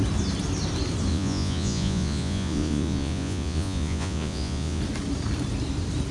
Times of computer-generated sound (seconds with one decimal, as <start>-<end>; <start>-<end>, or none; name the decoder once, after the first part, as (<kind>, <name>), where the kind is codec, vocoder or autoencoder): 1.1-4.8 (vocoder, Vocos)